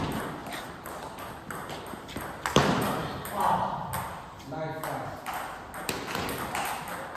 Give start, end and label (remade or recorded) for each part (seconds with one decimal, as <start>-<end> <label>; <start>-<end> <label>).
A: 0.0-7.2 recorded